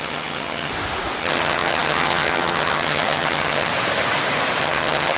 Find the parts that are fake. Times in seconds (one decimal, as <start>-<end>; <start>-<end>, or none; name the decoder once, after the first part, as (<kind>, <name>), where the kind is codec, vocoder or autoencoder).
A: 0.0-0.7 (vocoder, HiFi-GAN); 1.2-3.7; 4.6-5.2